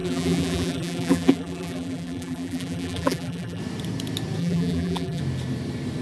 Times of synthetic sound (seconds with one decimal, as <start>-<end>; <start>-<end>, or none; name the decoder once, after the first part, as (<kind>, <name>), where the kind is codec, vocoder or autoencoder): 0.0-3.6 (vocoder, BigVGAN v2); 4.4-5.2